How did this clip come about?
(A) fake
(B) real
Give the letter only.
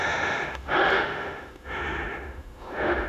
A